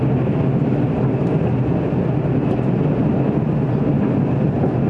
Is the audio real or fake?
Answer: real